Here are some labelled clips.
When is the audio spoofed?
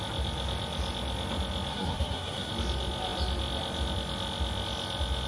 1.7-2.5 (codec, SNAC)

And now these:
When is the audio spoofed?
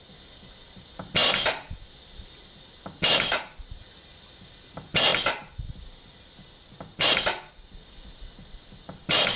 1.2-3.4 (vocoder, BigVGAN v2)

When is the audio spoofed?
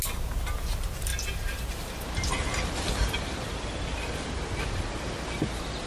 none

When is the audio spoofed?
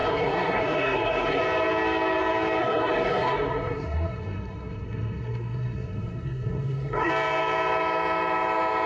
0.0-1.4 (codec, SNAC); 2.6-7.1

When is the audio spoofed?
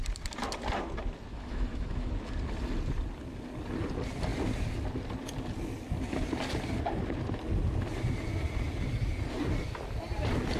1.3-2.1 (autoencoder, DAC-VAE)